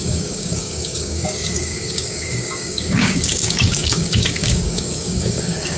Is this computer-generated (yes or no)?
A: yes